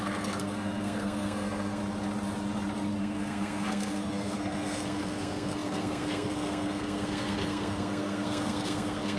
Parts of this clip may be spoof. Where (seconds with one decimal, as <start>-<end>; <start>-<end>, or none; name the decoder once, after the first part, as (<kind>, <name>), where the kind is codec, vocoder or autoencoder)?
0.0-1.8 (codec, SNAC); 3.0-9.2